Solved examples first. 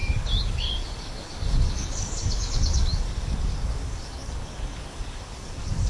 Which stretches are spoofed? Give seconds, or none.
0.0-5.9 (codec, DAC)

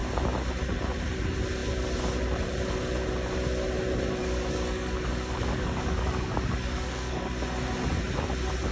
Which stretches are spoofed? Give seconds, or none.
4.2-7.4 (codec, DAC)

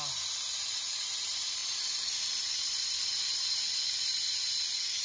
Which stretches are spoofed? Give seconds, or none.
none

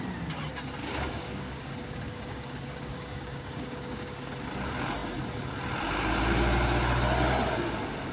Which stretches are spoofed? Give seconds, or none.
0.8-4.3 (codec, DAC)

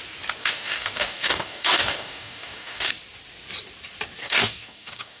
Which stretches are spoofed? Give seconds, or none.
0.4-2.9 (codec, DAC); 4.2-5.2

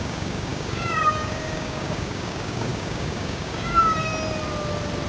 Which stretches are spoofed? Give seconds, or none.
0.0-4.1 (codec, DAC)

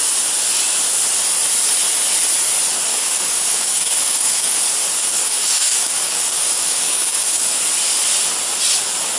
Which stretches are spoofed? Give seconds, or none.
2.9-4.6 (codec, DAC); 5.0-7.6

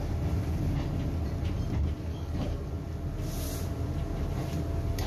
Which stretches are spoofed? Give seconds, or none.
2.1-2.7 (codec, DAC)